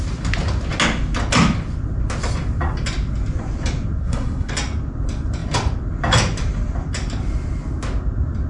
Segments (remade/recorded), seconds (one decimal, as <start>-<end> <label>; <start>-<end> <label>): 0.0-4.0 recorded; 4.0-4.5 remade; 4.5-8.5 recorded